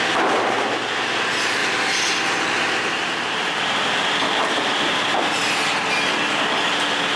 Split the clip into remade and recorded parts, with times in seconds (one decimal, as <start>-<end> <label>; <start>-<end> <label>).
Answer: 0.0-1.6 recorded; 1.6-5.9 remade; 5.9-7.2 recorded